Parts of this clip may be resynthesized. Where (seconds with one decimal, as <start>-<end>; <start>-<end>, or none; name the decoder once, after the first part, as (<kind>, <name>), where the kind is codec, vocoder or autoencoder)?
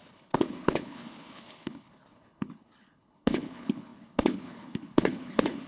0.0-5.7 (codec, HILCodec)